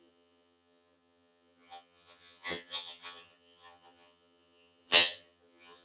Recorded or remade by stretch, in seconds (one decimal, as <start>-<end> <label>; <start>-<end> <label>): 0.0-5.8 remade